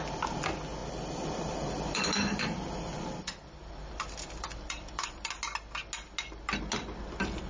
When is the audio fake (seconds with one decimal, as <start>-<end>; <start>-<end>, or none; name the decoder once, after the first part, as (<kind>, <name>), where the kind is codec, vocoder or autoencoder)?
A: 0.8-5.3 (vocoder, BigVGAN v2)